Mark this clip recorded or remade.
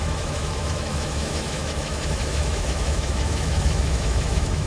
remade